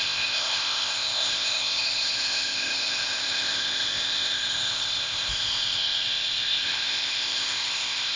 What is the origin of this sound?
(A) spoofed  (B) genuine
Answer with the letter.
A